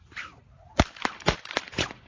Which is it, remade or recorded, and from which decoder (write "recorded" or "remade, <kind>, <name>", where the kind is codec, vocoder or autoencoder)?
remade, vocoder, BigVGAN v2